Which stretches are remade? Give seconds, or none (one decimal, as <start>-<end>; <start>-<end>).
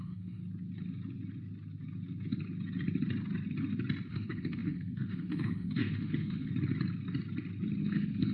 0.0-0.4; 4.1-6.5; 7.8-8.3